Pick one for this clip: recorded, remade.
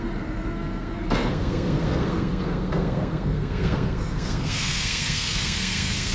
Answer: remade